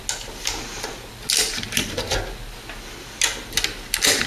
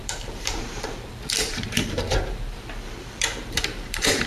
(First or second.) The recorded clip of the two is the first